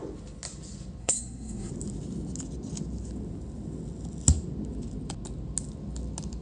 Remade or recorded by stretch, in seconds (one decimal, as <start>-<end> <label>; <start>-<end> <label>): 0.0-1.0 recorded; 1.0-1.7 remade; 1.7-6.4 recorded